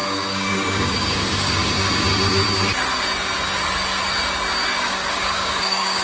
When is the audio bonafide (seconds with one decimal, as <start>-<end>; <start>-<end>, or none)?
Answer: 1.6-4.8